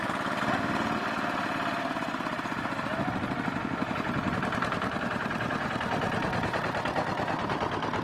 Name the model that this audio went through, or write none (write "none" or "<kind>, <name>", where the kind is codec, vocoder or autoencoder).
none